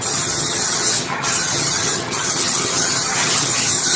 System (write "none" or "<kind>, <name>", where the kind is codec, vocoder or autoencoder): vocoder, HiFi-GAN